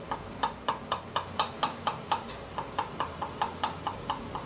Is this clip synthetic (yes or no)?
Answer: no